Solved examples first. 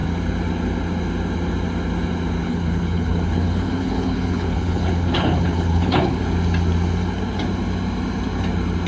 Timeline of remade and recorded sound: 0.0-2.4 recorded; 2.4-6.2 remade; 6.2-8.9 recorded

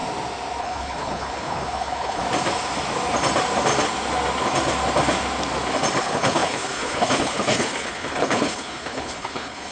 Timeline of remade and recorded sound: 0.0-0.6 recorded; 0.6-2.2 remade; 2.2-6.0 recorded; 6.0-9.7 remade

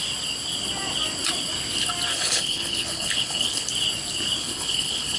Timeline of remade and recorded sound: 0.0-2.1 recorded; 2.1-3.7 remade; 3.7-4.4 recorded; 4.4-5.2 remade

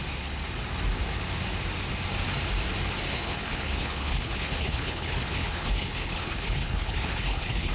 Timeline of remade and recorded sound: 0.0-3.1 recorded; 3.1-7.7 remade

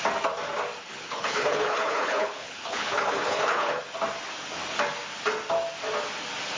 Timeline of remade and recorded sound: 0.0-0.8 recorded; 0.8-3.8 remade; 3.8-6.6 recorded